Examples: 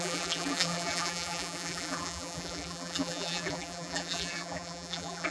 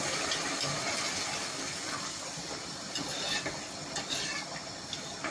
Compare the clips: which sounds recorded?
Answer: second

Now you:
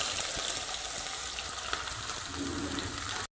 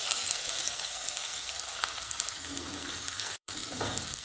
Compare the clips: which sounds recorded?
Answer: first